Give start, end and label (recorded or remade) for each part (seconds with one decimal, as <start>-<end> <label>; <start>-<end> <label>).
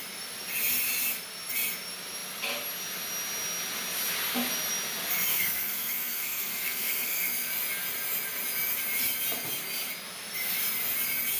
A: 0.0-5.3 recorded; 5.3-7.5 remade; 7.5-11.4 recorded